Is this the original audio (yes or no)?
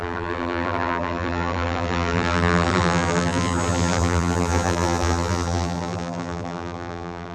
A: no